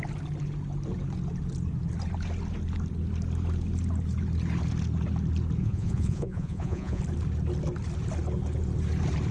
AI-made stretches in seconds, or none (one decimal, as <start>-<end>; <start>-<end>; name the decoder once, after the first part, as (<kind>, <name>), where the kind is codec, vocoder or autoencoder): 5.6-7.0 (vocoder, Vocos)